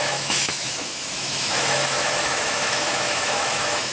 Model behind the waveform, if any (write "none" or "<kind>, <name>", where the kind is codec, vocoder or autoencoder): autoencoder, DAC-VAE